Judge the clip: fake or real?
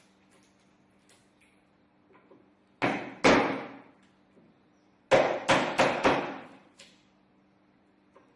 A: real